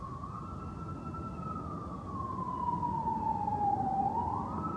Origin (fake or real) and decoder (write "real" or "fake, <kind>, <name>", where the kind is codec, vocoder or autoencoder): real